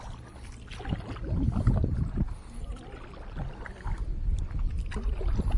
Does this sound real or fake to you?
real